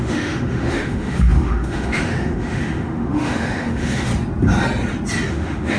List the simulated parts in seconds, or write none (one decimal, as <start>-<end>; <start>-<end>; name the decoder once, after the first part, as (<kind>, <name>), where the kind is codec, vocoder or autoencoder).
0.0-4.1 (autoencoder, DAC-VAE); 5.3-5.8